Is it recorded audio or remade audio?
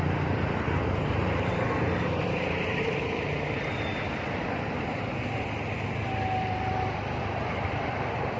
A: remade